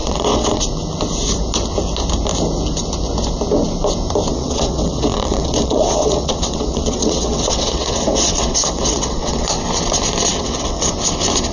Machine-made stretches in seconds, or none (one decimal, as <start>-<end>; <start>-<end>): 0.0-0.6; 4.3-9.5; 10.3-10.9